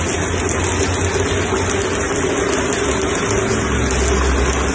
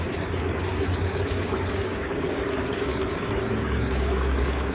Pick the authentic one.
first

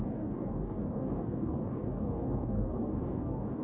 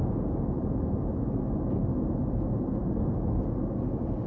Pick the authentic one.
second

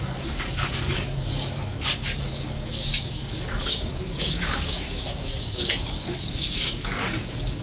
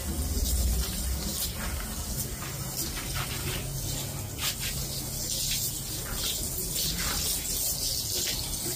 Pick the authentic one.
second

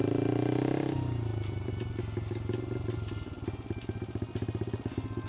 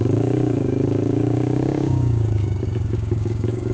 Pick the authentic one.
first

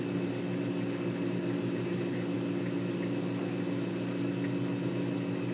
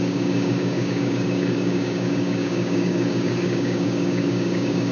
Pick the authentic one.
first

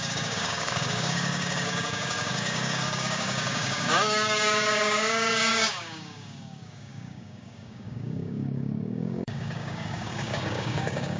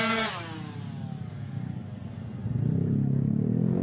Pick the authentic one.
second